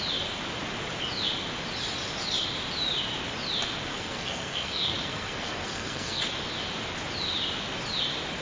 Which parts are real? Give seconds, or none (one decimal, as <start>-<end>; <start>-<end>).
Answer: 0.0-3.9; 6.2-8.4